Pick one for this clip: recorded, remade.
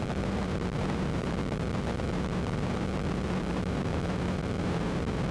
remade